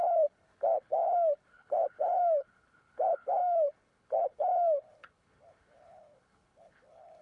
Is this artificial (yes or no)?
yes